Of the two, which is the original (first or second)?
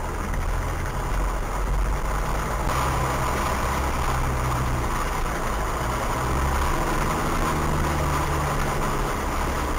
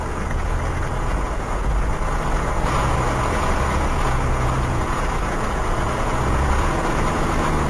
first